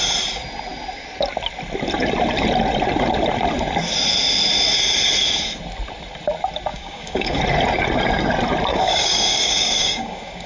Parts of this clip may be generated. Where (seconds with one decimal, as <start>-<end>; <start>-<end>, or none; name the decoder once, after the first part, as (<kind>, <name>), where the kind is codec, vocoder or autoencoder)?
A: 6.7-7.4 (codec, DAC); 8.7-10.5